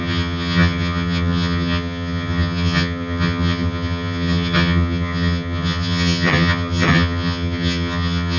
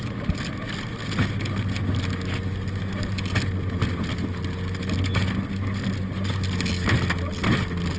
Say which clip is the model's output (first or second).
first